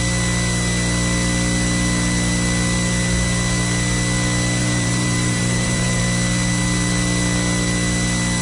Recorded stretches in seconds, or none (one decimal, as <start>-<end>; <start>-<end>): 0.0-4.6; 6.0-8.4